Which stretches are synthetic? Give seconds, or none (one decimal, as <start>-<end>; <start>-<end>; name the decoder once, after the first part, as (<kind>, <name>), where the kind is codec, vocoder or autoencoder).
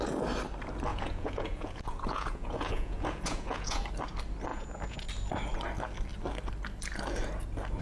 0.9-3.9 (vocoder, Vocos); 4.5-5.1